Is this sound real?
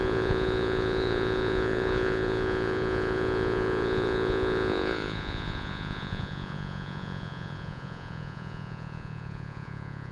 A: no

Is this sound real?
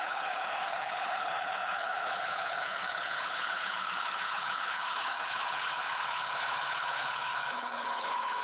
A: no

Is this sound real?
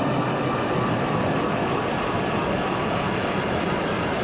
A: yes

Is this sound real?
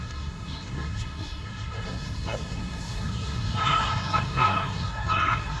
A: no